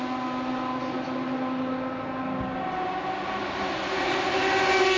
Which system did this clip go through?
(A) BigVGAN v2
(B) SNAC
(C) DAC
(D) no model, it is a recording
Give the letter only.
D